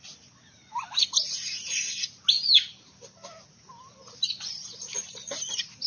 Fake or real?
real